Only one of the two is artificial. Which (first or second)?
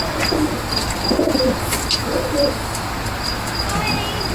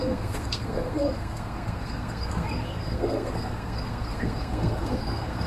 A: second